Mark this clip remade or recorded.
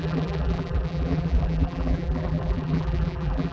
remade